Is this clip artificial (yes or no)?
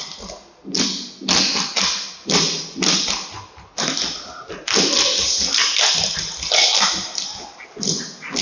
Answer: no